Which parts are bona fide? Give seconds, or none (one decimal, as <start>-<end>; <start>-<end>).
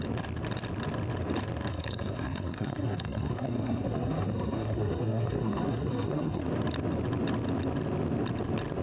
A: 0.0-1.7; 6.4-8.8